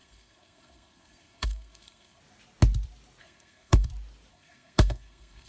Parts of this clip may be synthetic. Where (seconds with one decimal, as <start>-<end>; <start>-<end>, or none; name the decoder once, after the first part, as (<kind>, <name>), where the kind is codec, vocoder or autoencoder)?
0.0-2.2 (codec, SNAC); 3.2-3.9; 4.3-5.5